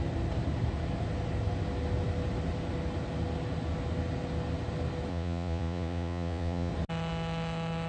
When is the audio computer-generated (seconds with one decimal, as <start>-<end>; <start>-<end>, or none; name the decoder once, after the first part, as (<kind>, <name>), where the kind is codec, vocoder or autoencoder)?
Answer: 5.1-6.7 (vocoder, Vocos)